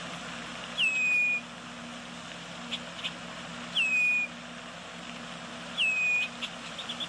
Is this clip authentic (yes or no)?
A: yes